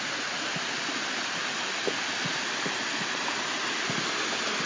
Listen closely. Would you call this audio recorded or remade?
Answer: recorded